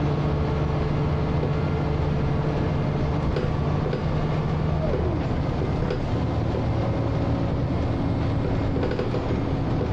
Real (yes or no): yes